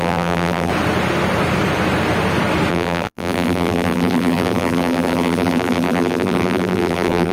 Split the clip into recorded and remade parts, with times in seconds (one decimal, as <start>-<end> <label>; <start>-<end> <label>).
0.0-0.7 remade; 0.7-2.7 recorded; 2.7-7.3 remade

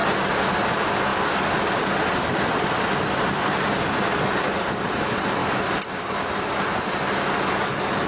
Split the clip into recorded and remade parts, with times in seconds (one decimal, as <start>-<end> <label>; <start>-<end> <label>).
0.0-8.1 recorded

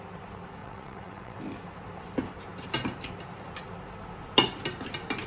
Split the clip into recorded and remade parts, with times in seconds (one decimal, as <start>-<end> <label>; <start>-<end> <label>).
0.0-0.6 recorded; 0.6-1.4 remade; 1.4-5.3 recorded